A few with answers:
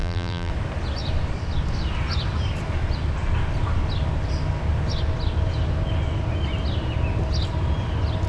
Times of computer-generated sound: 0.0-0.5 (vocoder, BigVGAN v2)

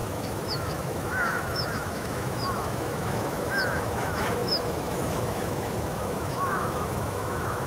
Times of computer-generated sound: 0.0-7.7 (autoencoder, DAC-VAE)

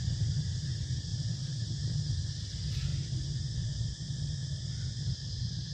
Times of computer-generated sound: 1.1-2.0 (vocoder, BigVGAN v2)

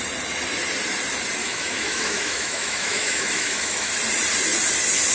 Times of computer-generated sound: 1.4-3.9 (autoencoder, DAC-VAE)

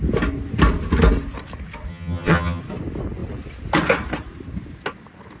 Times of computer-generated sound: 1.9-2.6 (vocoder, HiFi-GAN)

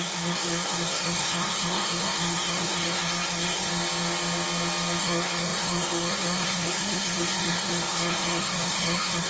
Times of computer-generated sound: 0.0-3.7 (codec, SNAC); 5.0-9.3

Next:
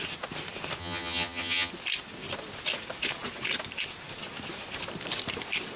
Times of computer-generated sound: 0.8-1.7 (vocoder, HiFi-GAN)

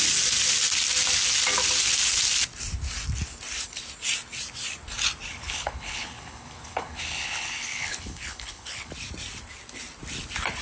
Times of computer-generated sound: 5.3-8.9 (codec, HILCodec)